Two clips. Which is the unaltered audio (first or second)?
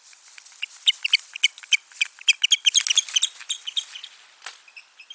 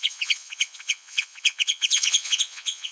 first